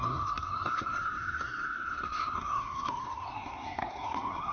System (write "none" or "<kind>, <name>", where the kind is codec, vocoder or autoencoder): codec, SNAC